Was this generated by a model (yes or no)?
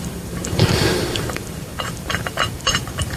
yes